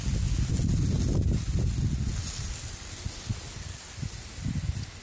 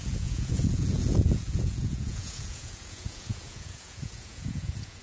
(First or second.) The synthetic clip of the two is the second